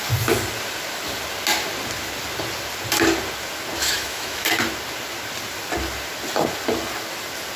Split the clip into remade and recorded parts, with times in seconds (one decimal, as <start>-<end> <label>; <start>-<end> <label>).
0.0-3.8 recorded; 3.8-4.5 remade; 4.5-7.6 recorded